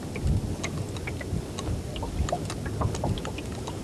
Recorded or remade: recorded